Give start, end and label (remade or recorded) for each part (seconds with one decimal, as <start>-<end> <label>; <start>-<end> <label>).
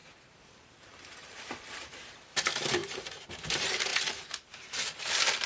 0.0-2.8 remade; 2.8-3.5 recorded; 3.5-5.5 remade